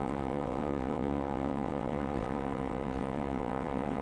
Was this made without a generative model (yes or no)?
no